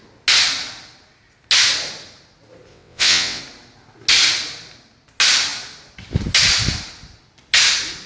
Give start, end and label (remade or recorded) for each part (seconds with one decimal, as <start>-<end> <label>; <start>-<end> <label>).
0.0-2.7 recorded; 2.7-3.4 remade; 3.4-8.1 recorded

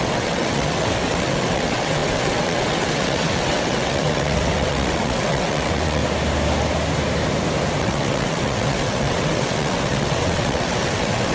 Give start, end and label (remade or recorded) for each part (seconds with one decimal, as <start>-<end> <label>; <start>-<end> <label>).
0.0-6.0 remade; 6.0-7.8 recorded; 7.8-11.3 remade

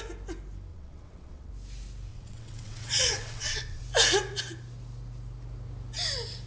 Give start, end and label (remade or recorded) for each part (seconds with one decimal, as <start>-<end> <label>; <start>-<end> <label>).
0.0-0.7 recorded; 0.7-1.5 remade; 1.5-2.1 recorded; 2.1-3.8 remade; 3.8-6.5 recorded

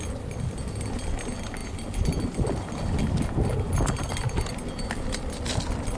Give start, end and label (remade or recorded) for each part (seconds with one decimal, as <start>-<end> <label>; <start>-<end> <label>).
0.0-6.0 recorded

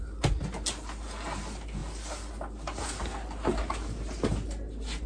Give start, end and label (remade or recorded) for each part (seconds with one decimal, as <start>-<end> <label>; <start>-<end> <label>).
0.0-5.1 recorded

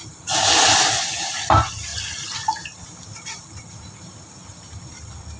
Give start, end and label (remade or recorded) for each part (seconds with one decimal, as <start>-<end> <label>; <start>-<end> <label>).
0.0-5.4 recorded

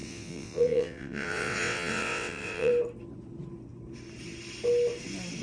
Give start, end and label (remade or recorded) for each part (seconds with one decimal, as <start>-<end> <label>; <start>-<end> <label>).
0.0-2.7 remade; 2.7-5.4 recorded

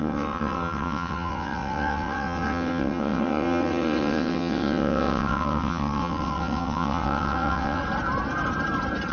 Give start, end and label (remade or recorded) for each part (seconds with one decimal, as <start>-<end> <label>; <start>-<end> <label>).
0.0-7.8 remade; 7.8-9.1 recorded